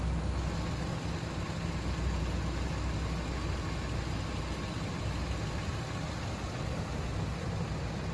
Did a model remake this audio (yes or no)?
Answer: no